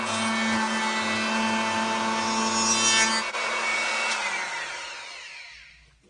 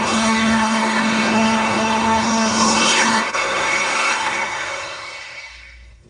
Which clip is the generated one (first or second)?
second